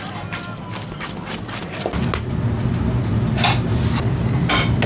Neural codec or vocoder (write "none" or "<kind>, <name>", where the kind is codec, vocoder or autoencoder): none